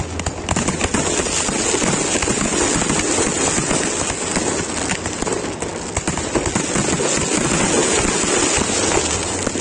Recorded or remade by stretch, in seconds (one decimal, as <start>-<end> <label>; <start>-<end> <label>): 0.0-9.6 recorded